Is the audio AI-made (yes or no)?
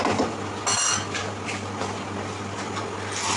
no